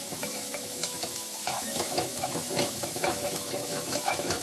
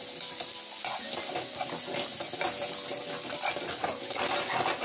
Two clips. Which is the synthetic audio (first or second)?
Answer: first